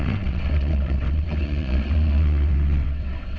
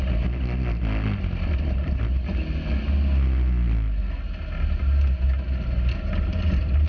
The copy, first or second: first